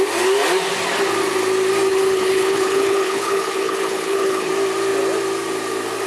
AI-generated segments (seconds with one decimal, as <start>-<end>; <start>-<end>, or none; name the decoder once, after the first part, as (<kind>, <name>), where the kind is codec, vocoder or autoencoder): 1.9-4.5 (codec, HILCodec)

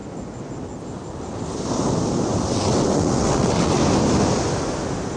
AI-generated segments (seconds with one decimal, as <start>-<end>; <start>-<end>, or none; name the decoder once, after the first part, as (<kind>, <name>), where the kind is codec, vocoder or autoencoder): 2.5-3.8 (vocoder, WaveNeXt)

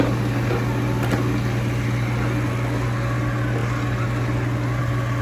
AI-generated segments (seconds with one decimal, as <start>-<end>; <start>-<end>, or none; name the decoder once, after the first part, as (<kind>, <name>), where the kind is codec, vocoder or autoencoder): none

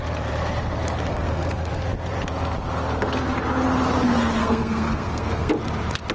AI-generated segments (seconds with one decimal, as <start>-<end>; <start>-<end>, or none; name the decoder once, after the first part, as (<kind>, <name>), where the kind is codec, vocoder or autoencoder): 1.1-1.7 (codec, SNAC); 4.4-5.5

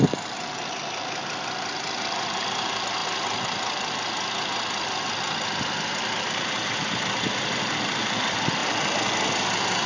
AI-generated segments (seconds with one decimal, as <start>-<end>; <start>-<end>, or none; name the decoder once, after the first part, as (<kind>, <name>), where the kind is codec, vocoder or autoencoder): none